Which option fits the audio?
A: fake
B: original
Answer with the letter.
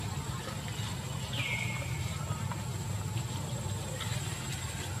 B